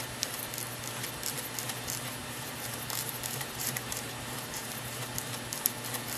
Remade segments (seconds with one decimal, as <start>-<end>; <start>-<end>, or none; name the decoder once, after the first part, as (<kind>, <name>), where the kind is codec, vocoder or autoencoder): 2.2-5.1 (vocoder, BigVGAN v2)